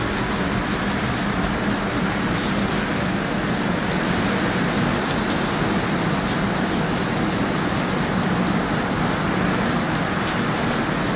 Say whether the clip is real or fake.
real